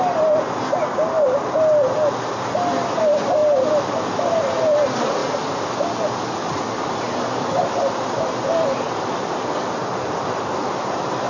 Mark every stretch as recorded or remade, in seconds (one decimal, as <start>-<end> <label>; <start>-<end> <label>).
0.0-11.3 recorded